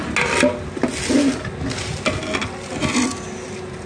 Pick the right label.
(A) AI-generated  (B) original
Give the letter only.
B